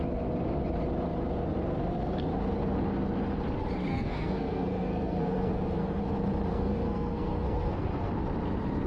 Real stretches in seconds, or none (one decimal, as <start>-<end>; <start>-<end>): 0.0-3.9; 6.0-6.5; 8.1-8.9